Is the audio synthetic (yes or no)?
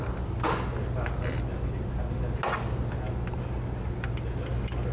no